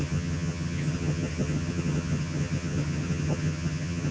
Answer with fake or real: fake